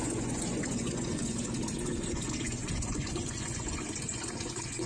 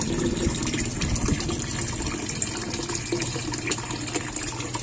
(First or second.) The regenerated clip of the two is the first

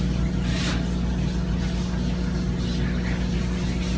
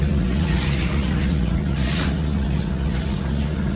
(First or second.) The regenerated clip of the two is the second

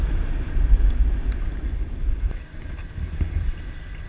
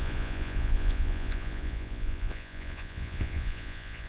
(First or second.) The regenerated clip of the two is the second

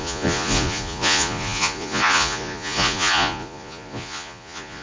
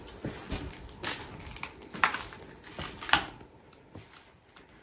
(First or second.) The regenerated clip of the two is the first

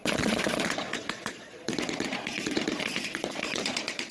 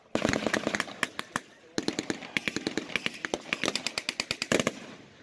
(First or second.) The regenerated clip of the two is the first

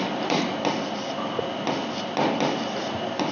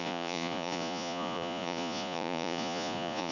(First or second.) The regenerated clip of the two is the second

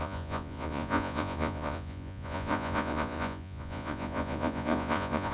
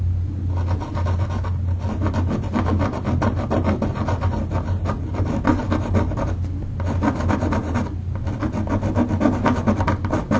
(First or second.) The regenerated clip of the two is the first